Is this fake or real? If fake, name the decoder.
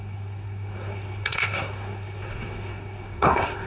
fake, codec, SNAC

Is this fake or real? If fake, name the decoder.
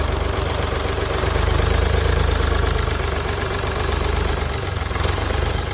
fake, vocoder, BigVGAN v2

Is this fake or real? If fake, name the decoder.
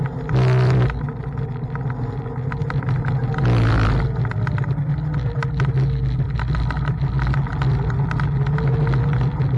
real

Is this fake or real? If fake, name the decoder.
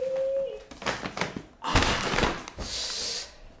real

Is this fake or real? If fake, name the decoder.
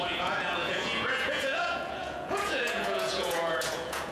fake, vocoder, Vocos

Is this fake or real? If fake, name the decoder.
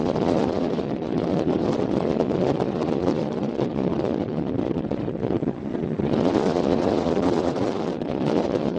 fake, vocoder, Vocos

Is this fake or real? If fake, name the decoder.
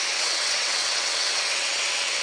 fake, vocoder, WaveNeXt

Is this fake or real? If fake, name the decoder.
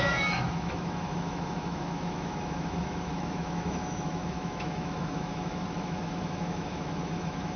fake, autoencoder, DAC-VAE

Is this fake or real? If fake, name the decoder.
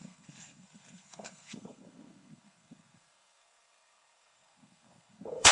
fake, codec, SNAC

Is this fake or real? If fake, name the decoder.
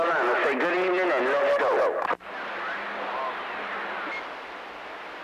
real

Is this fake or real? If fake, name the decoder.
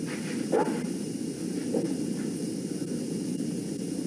real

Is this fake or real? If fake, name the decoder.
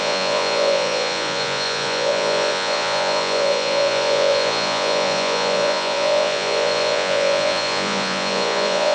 fake, vocoder, Vocos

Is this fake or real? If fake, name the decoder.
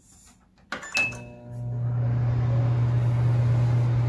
real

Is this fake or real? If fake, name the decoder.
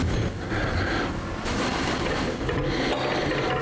real